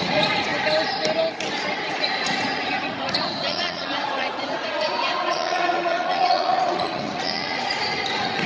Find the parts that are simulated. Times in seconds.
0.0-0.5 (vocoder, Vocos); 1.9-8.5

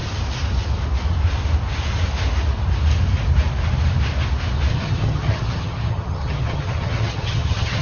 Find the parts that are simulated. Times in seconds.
4.7-7.8 (vocoder, HiFi-GAN)

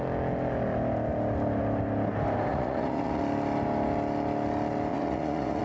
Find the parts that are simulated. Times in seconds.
2.5-3.2 (vocoder, Vocos); 4.9-5.6

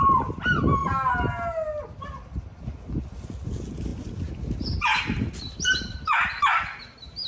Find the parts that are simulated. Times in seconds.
none